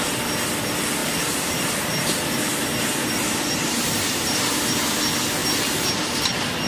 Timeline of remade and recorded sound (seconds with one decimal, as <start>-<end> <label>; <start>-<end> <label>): 0.0-1.0 recorded; 1.0-5.0 remade; 5.0-5.4 recorded; 5.4-6.2 remade; 6.2-6.7 recorded